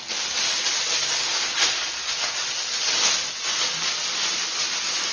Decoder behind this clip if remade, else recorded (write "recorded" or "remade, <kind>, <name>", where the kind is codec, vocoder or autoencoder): recorded